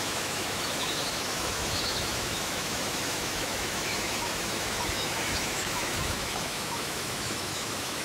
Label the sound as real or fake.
fake